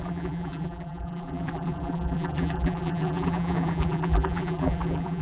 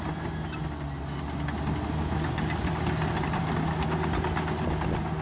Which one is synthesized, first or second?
first